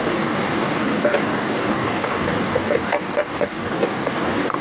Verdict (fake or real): fake